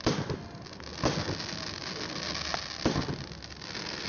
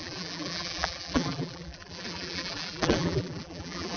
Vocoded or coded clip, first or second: second